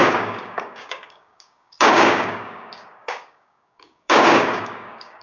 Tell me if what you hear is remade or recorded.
remade